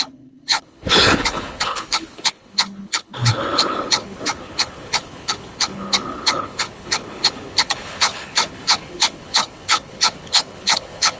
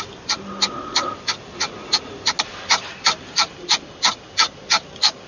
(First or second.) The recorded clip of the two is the second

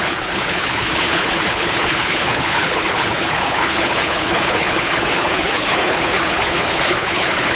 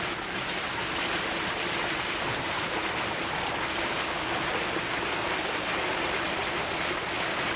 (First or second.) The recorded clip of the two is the second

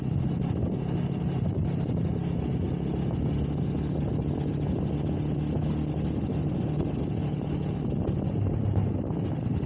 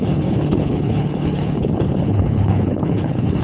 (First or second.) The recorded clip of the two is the first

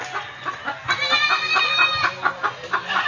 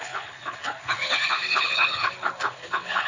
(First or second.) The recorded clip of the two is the first